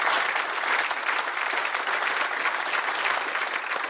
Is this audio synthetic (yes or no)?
no